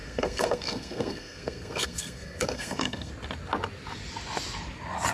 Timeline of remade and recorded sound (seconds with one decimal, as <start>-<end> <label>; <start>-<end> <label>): 0.0-3.1 remade; 3.1-5.1 recorded